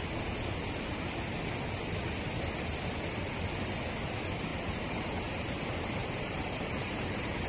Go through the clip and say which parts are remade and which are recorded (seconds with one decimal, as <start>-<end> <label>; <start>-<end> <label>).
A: 0.0-4.5 recorded; 4.5-5.1 remade; 5.1-6.0 recorded; 6.0-7.5 remade